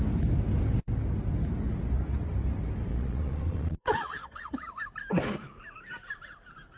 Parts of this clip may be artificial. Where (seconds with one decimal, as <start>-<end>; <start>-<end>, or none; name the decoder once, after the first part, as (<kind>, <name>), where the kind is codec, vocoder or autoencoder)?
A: 2.9-4.8 (vocoder, Vocos)